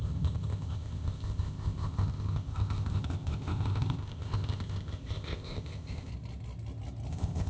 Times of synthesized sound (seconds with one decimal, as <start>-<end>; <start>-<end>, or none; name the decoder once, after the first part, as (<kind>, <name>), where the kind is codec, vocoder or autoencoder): 0.0-6.1 (codec, ZipCodec); 7.1-7.5